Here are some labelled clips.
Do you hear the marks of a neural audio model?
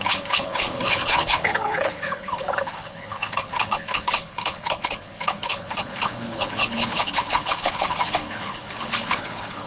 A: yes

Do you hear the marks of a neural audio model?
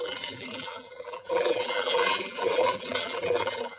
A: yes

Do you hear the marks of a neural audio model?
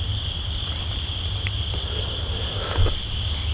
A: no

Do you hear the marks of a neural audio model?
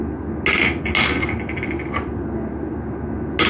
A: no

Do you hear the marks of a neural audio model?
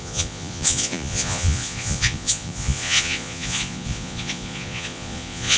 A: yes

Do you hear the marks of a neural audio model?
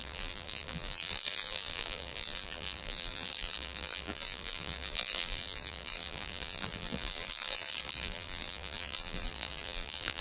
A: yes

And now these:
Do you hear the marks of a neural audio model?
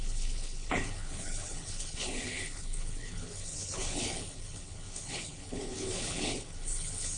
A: yes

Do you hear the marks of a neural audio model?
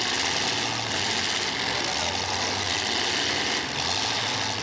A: no